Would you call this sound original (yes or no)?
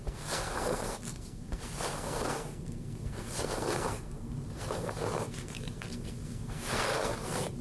no